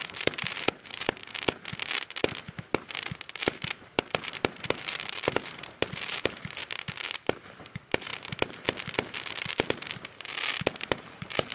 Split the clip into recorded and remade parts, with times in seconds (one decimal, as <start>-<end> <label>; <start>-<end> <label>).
0.0-1.2 remade; 1.2-3.4 recorded; 3.4-6.6 remade; 6.6-7.1 recorded; 7.1-8.1 remade; 8.1-10.9 recorded; 10.9-11.5 remade